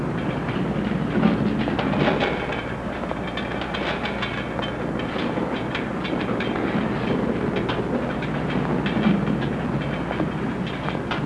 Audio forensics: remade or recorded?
recorded